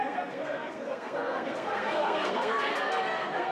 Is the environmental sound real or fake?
fake